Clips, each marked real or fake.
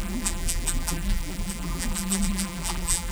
fake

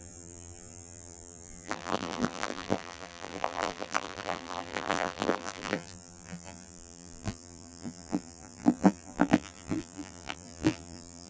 fake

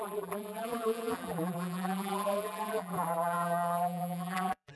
fake